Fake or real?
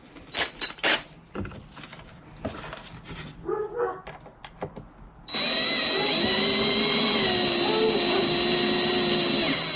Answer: real